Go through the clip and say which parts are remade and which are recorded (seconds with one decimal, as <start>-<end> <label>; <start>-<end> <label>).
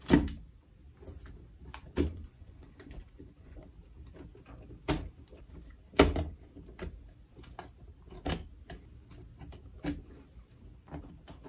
0.0-2.1 recorded; 2.1-3.6 remade; 3.6-11.5 recorded